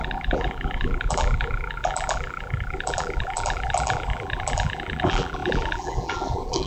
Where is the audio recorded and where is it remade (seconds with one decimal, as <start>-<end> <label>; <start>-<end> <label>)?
0.0-6.7 remade